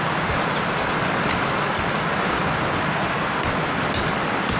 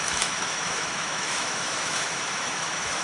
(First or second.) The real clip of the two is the first